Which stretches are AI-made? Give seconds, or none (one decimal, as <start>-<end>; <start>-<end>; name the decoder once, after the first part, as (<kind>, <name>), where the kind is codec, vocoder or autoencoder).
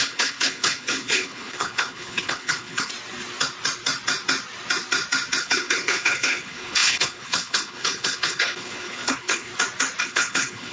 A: 0.0-2.9 (codec, HILCodec); 5.4-9.5; 10.0-10.7